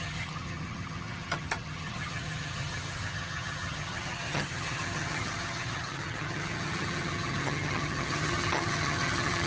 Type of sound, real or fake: fake